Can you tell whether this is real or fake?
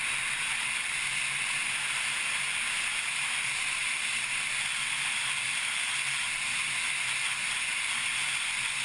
real